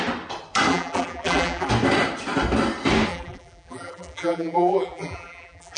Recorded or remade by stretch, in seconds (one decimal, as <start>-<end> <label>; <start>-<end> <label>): 0.0-0.7 recorded; 0.7-1.7 remade; 1.7-3.1 recorded; 3.1-5.8 remade